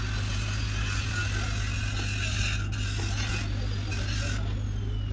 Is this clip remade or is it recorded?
recorded